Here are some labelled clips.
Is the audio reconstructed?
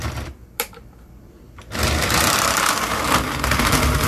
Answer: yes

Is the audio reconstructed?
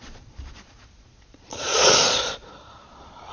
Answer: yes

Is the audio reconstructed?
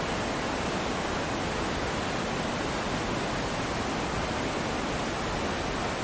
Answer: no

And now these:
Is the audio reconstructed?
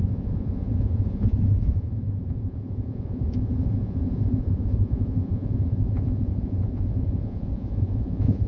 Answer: yes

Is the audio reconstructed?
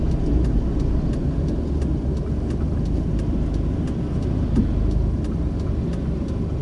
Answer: no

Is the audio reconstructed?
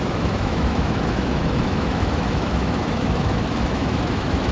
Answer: yes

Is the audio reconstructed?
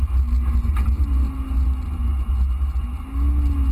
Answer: no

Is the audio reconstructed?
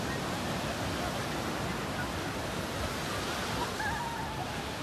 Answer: no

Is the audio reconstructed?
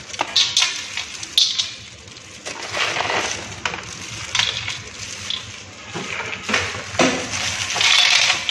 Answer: no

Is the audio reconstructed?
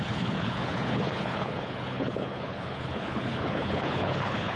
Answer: yes